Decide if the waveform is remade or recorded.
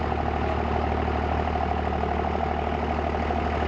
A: recorded